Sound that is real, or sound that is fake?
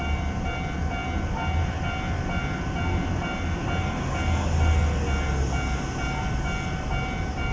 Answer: real